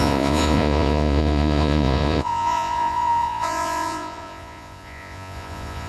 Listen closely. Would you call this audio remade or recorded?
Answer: remade